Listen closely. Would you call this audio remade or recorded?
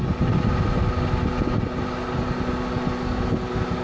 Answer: recorded